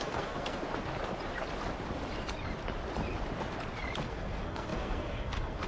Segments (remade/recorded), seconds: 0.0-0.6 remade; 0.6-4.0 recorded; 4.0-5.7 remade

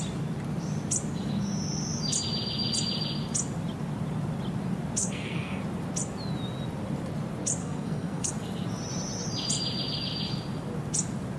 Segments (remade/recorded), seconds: 0.0-5.0 recorded; 5.0-5.6 remade; 5.6-7.6 recorded; 7.6-8.3 remade; 8.3-11.4 recorded

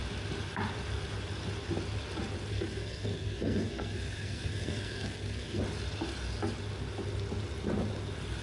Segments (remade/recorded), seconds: 0.0-2.5 recorded; 2.5-5.6 remade; 5.6-8.4 recorded

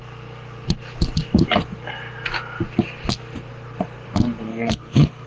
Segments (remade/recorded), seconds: 0.0-4.5 recorded; 4.5-5.3 remade

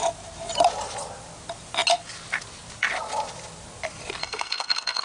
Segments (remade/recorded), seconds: 0.0-4.2 recorded; 4.2-5.0 remade

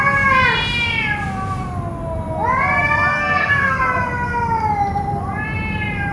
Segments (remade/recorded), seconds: 0.0-3.1 recorded; 3.1-3.8 remade; 3.8-6.1 recorded

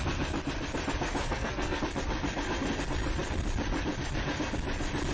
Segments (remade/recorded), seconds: 0.0-1.2 recorded; 1.2-1.8 remade; 1.8-5.1 recorded